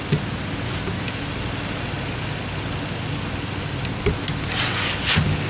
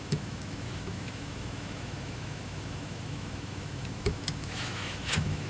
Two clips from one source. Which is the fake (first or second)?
second